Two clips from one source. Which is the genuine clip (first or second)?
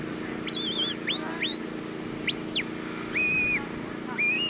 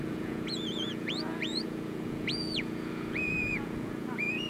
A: first